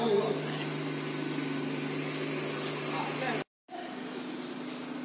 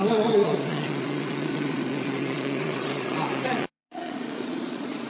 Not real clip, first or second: second